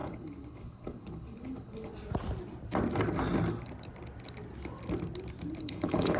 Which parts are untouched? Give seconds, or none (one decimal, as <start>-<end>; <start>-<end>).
1.9-5.6